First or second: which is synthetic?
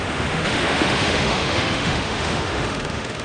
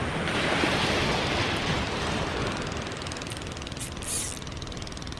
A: first